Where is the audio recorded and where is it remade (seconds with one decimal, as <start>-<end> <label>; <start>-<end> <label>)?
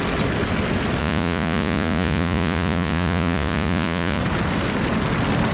0.0-1.0 recorded; 1.0-4.2 remade; 4.2-5.5 recorded